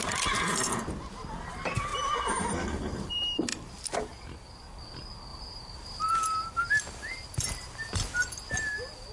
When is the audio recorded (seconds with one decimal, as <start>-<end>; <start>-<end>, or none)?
0.0-1.9; 3.1-5.3; 6.1-9.1